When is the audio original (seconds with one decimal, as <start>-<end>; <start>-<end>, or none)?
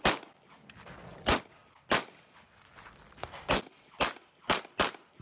0.0-5.2